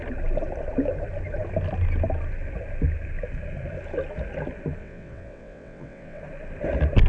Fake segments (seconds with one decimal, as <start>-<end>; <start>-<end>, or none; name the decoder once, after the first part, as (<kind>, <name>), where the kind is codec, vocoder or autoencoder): 4.8-6.2 (vocoder, WaveNeXt)